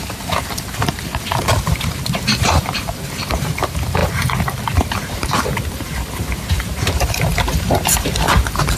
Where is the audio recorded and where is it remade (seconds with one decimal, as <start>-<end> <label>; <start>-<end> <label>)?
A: 0.0-8.8 remade